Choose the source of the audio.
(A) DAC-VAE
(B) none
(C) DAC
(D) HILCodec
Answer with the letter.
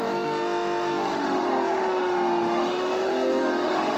A